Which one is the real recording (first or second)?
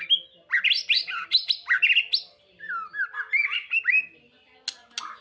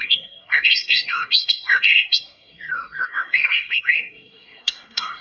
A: first